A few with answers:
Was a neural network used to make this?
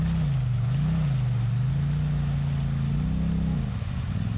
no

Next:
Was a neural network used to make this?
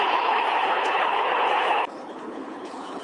yes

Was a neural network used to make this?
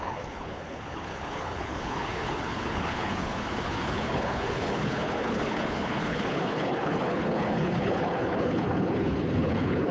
yes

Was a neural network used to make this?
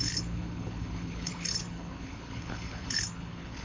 yes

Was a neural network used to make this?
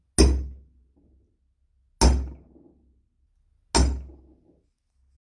no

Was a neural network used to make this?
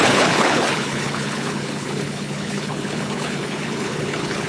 yes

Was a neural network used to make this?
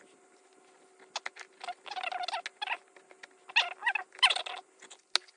no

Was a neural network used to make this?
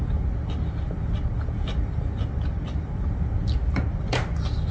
no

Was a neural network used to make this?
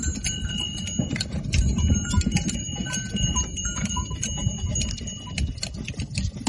no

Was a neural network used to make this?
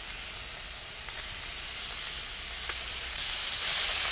no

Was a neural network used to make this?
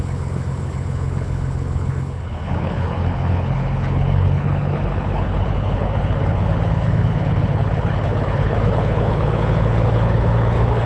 yes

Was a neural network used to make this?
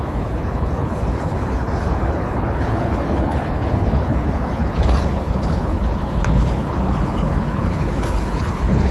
yes